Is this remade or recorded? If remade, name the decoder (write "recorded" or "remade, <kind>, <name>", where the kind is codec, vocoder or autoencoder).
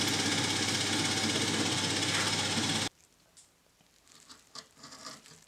recorded